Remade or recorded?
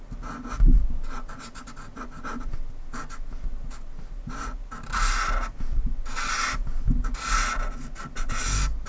recorded